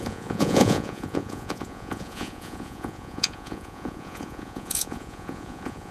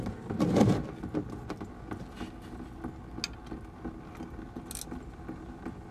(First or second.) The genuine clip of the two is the second